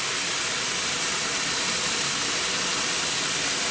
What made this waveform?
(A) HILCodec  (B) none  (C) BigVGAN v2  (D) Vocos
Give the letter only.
B